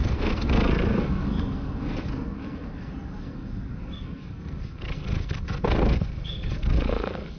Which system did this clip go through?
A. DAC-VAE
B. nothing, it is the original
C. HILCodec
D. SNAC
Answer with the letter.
D